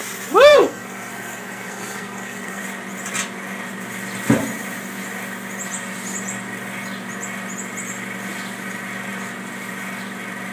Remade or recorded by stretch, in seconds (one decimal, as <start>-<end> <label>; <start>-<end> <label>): 0.0-0.5 recorded; 0.5-2.6 remade; 2.6-10.5 recorded